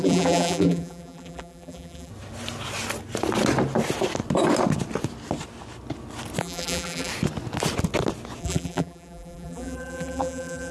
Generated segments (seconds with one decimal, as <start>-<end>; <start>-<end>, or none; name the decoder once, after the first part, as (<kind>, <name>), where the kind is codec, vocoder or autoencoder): 0.0-2.1 (vocoder, BigVGAN v2); 6.4-7.1; 8.4-10.7